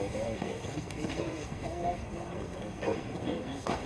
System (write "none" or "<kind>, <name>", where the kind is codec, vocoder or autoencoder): codec, SNAC